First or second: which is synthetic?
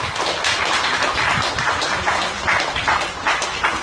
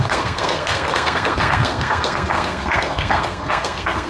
second